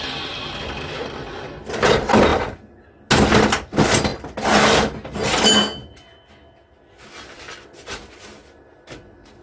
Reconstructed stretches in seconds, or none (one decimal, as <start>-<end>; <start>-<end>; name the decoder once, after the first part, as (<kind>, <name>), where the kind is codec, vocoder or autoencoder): none